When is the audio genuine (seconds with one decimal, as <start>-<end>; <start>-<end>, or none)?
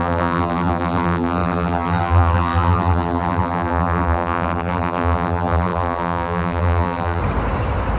7.2-8.0